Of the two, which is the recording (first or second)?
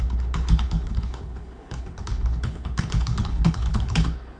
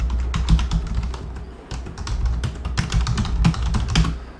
second